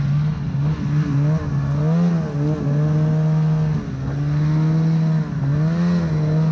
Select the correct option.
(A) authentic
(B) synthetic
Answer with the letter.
A